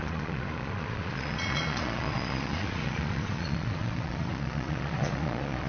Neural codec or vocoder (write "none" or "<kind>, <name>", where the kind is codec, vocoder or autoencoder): vocoder, Vocos